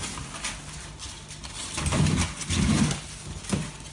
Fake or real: real